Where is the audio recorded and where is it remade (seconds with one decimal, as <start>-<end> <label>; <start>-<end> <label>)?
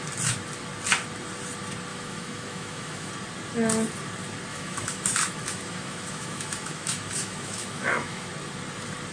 0.0-1.9 recorded; 1.9-3.1 remade; 3.1-4.5 recorded; 4.5-8.3 remade; 8.3-9.1 recorded